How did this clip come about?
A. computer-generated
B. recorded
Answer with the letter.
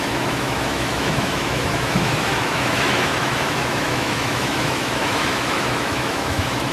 A